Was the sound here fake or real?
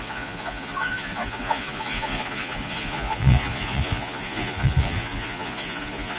fake